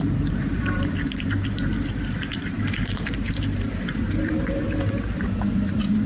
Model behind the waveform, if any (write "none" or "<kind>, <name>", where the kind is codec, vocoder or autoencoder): vocoder, BigVGAN v2